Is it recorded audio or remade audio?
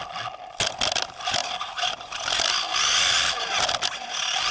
recorded